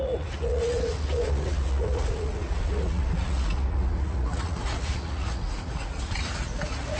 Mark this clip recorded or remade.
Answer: remade